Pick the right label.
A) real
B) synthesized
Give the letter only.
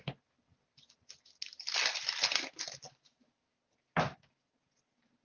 A